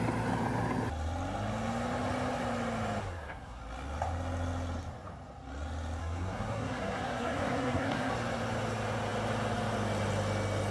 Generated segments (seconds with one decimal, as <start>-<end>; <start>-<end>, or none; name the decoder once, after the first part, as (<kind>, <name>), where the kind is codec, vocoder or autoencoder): 3.0-3.6 (codec, SNAC); 6.0-8.1